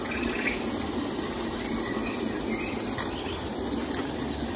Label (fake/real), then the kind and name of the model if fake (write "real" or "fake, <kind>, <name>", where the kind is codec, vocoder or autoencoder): real